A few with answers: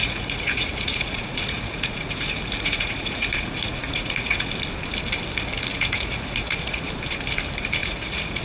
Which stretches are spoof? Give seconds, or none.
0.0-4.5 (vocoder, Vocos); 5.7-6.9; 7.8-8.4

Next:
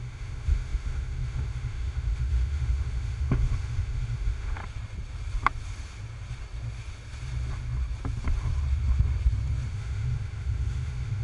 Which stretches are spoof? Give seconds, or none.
0.0-4.6 (autoencoder, DAC-VAE); 9.7-11.2

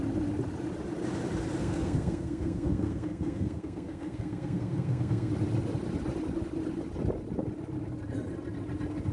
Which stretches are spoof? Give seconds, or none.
1.6-5.3 (codec, SNAC)

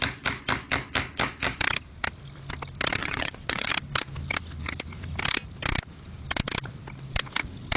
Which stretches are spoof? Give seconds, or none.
3.0-3.7 (vocoder, WaveNeXt)